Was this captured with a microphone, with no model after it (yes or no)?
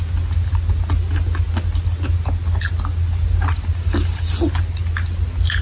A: yes